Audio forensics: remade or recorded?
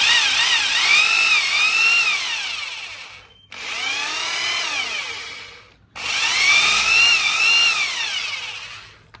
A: recorded